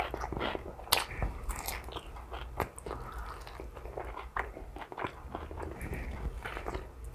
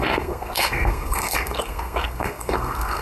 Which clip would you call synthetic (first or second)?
second